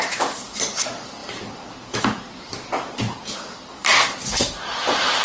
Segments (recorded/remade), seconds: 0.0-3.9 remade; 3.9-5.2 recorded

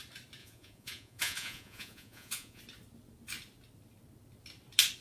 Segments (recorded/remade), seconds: 0.0-0.4 recorded; 0.4-2.6 remade; 2.6-5.0 recorded

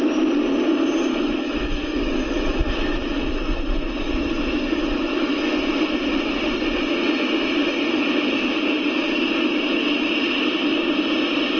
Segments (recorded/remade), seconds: 0.0-1.1 recorded; 1.1-5.4 remade; 5.4-11.6 recorded

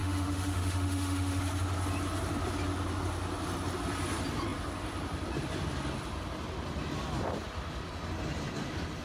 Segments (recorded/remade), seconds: 0.0-1.4 remade; 1.4-9.0 recorded

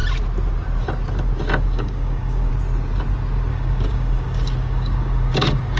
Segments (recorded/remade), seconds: 0.0-1.6 recorded; 1.6-2.5 remade; 2.5-3.5 recorded; 3.5-5.8 remade